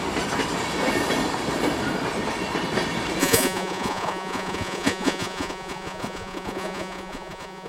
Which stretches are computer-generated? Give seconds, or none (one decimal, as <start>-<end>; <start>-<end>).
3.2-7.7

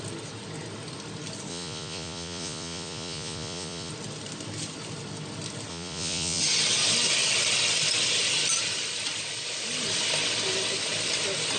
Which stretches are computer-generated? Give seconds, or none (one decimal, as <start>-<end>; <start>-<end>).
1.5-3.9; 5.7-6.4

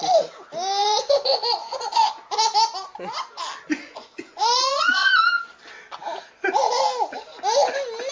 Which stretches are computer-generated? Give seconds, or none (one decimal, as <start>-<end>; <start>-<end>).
0.8-2.1; 3.7-5.2

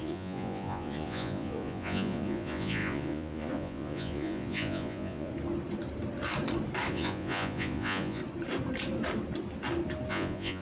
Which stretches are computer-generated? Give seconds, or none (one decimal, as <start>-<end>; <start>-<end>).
0.0-5.3; 6.9-8.2; 10.1-10.6

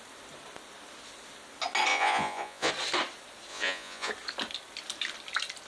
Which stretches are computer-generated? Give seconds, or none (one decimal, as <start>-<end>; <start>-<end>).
1.9-2.7; 3.5-4.1

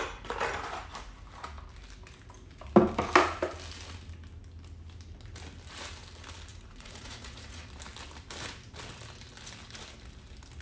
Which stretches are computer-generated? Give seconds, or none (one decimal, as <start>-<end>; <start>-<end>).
6.5-7.7

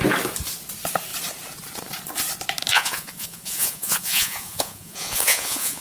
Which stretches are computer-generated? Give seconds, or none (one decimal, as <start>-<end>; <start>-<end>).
2.7-5.8